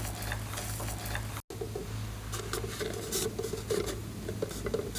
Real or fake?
real